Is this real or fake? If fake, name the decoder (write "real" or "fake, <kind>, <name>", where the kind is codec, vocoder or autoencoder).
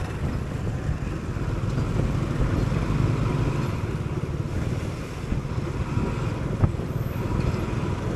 real